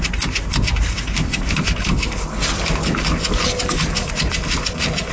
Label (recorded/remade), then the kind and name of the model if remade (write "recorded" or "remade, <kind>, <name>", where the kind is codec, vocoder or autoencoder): recorded